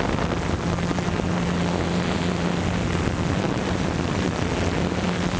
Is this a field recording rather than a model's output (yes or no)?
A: yes